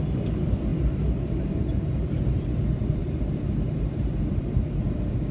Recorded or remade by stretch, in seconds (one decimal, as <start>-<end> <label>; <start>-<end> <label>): 0.0-3.0 recorded; 3.0-4.8 remade; 4.8-5.3 recorded